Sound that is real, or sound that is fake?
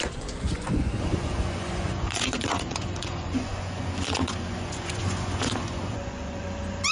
fake